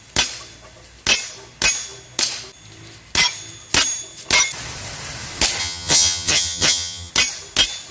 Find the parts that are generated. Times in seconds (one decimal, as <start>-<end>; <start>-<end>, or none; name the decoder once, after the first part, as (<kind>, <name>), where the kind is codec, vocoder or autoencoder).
5.6-7.1 (vocoder, HiFi-GAN)